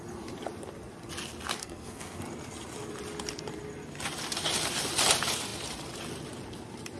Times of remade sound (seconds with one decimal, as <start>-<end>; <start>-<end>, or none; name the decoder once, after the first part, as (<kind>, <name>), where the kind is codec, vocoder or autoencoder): 1.6-2.2 (codec, SNAC)